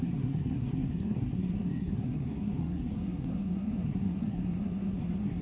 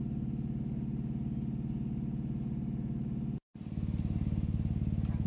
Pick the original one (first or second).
second